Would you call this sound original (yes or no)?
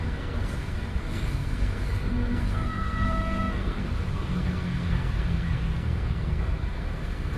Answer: no